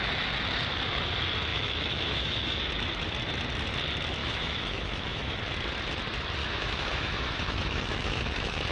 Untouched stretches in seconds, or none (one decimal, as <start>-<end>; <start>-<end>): 0.0-1.5; 2.6-4.2; 5.4-6.4